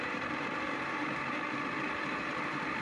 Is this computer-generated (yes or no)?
yes